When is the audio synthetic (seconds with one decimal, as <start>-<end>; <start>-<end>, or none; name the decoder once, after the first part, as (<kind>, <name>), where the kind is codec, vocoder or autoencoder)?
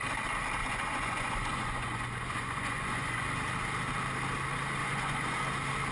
0.6-3.2 (vocoder, Vocos); 4.8-5.4